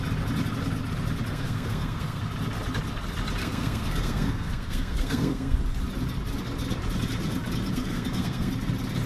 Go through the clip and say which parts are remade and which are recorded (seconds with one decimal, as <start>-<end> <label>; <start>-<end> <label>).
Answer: 0.0-1.3 recorded; 1.3-2.2 remade; 2.2-3.4 recorded; 3.4-5.6 remade; 5.6-7.7 recorded; 7.7-8.5 remade; 8.5-9.1 recorded